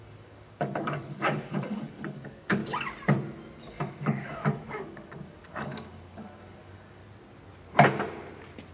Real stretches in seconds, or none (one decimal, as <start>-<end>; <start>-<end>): 2.6-3.7; 7.0-8.7